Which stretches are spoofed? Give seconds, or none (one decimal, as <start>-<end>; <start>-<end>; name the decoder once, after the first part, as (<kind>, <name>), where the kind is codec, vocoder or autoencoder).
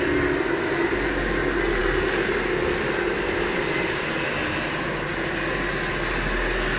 none